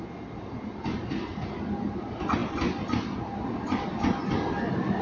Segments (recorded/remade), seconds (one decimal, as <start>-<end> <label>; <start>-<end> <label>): 0.0-5.0 recorded